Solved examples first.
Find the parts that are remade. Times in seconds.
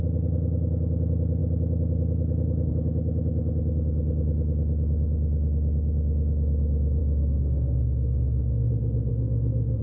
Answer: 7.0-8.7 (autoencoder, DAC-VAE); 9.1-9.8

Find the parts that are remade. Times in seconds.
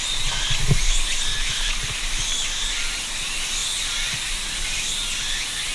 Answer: 1.3-1.8 (autoencoder, DAC-VAE)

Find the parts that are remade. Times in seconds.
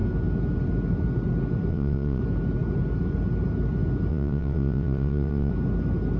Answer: 1.7-2.2 (vocoder, WaveNeXt); 4.1-5.5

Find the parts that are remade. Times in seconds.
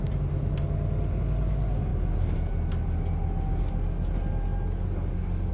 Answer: none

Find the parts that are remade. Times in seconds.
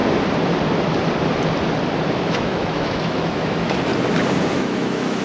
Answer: 2.1-3.9 (autoencoder, DAC-VAE); 4.5-5.2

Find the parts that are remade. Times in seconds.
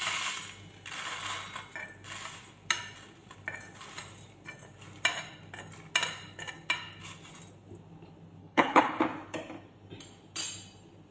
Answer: 8.4-9.0 (codec, HILCodec)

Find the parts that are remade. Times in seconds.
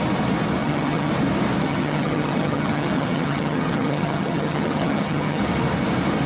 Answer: 0.6-1.1 (vocoder, HiFi-GAN); 1.6-5.4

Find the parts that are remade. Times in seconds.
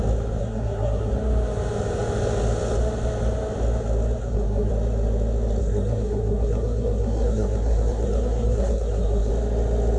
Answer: 0.4-1.1 (codec, SNAC); 4.2-4.7; 5.6-9.3